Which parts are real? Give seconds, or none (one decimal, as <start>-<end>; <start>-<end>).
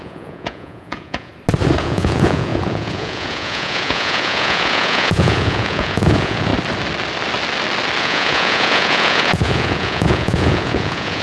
1.3-1.8; 6.5-8.0